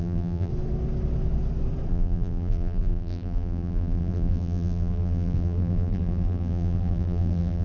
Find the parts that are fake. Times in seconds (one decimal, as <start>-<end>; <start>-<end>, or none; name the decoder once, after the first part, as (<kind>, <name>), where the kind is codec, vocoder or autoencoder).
0.0-0.5 (vocoder, BigVGAN v2); 1.9-7.6